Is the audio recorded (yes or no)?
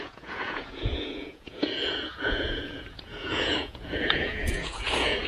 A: no